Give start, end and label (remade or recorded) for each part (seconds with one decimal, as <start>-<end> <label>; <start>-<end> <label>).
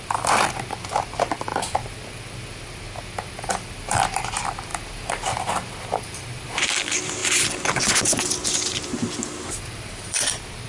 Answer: 0.0-1.5 remade; 1.5-3.4 recorded; 3.4-7.2 remade; 7.2-9.9 recorded; 9.9-10.7 remade